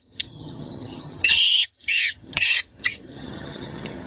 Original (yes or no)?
no